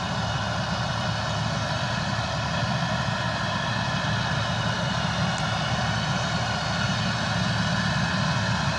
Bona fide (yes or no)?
yes